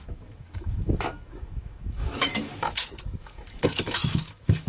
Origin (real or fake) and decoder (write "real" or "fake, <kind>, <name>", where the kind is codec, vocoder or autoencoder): fake, autoencoder, DAC-VAE